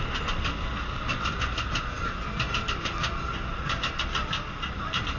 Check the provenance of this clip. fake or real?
real